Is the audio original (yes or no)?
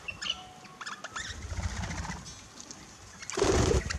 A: yes